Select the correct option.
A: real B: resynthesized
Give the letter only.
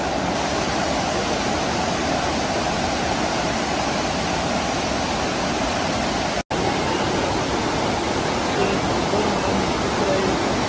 A